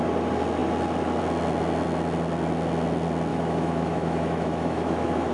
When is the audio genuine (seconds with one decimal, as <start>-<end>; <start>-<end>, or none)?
0.0-3.3